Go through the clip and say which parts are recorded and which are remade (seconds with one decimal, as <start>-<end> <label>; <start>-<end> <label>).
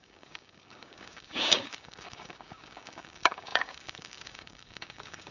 0.0-5.3 remade